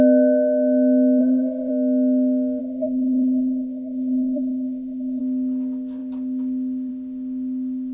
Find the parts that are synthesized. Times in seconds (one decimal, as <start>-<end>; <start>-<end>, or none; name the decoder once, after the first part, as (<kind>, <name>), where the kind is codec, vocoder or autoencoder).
1.2-1.7 (codec, SNAC); 2.6-5.2